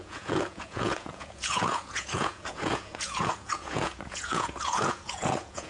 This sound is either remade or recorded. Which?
remade